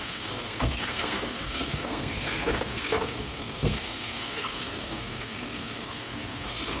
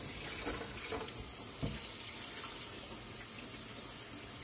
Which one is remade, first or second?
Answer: first